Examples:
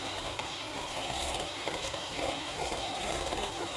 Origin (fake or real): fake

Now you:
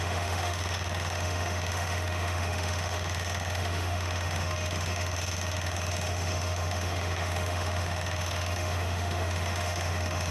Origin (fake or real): fake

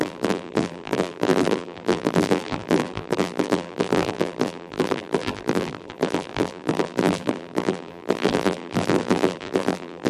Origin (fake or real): fake